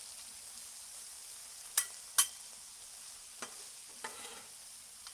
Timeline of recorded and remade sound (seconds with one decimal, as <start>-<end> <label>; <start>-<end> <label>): 0.0-5.1 recorded